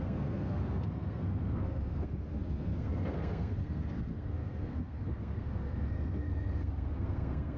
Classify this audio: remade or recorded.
remade